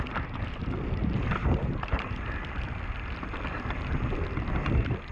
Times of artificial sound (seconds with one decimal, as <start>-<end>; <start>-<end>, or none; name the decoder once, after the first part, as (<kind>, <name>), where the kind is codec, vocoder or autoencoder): 1.4-2.1 (vocoder, BigVGAN v2)